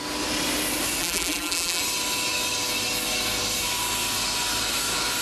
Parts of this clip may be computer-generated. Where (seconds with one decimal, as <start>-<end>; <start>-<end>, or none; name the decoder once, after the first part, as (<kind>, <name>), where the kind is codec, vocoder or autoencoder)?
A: 1.0-1.8 (vocoder, BigVGAN v2)